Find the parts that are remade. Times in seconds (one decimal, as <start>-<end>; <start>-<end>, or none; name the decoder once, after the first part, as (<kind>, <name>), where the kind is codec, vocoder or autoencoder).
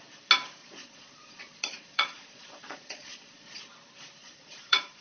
0.6-3.6 (vocoder, Vocos); 4.2-5.0